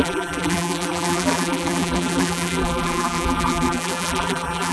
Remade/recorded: remade